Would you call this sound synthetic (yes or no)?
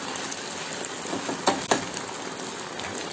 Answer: no